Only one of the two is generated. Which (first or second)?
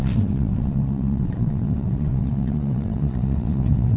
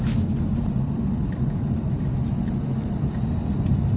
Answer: first